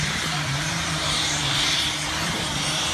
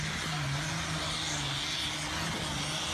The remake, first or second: first